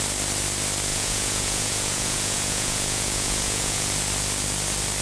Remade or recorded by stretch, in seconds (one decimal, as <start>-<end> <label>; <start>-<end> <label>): 0.0-0.9 recorded; 0.9-3.9 remade; 3.9-5.0 recorded